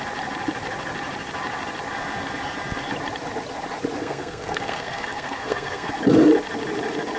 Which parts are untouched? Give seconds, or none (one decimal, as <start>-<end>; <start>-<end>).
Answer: 0.0-4.0; 5.9-7.2